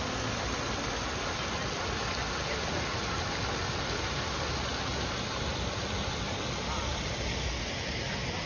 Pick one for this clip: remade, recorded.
recorded